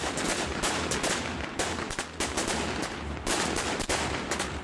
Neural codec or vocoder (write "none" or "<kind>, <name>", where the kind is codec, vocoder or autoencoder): none